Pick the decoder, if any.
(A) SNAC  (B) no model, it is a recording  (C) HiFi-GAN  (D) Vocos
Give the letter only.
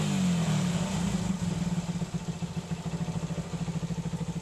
B